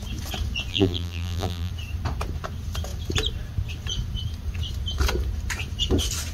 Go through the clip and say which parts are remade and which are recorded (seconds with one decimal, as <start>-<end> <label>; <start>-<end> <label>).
0.0-0.7 recorded; 0.7-1.7 remade; 1.7-6.3 recorded